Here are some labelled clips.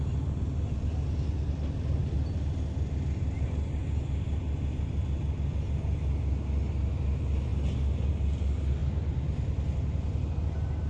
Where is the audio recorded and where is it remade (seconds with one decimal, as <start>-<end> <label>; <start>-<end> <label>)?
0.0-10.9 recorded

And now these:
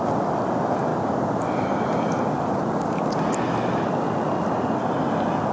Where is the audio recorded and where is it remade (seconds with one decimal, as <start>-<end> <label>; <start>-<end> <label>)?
0.0-5.5 recorded

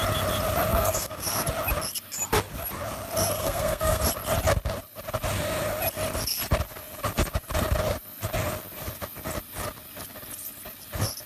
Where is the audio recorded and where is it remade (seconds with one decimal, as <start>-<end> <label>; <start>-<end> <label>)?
0.0-0.7 recorded; 0.7-1.3 remade; 1.3-3.4 recorded; 3.4-4.0 remade; 4.0-11.3 recorded

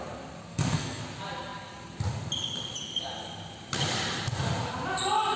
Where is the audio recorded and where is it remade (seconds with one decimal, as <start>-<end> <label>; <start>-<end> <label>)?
0.0-0.4 recorded; 0.4-1.0 remade; 1.0-5.4 recorded

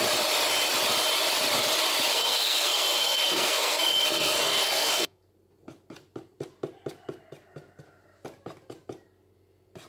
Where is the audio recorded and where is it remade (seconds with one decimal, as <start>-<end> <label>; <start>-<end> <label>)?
0.0-2.1 recorded; 2.1-5.3 remade; 5.3-9.9 recorded

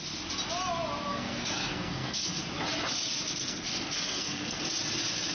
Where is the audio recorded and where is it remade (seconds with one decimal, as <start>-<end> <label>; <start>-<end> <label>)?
0.0-1.1 recorded; 1.1-2.4 remade; 2.4-3.4 recorded; 3.4-4.6 remade; 4.6-5.3 recorded